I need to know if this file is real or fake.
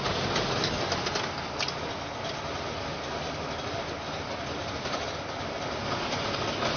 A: real